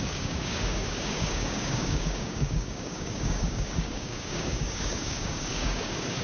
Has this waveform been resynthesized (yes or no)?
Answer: yes